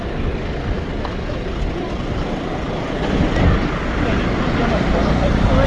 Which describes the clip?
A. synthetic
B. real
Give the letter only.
B